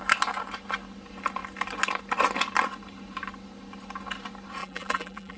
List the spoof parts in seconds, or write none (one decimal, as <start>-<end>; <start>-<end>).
4.6-5.4